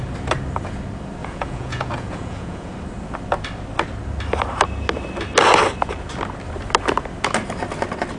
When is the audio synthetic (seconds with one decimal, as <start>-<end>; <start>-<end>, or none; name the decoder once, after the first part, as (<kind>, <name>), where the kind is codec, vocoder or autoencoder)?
1.2-2.7 (vocoder, Vocos)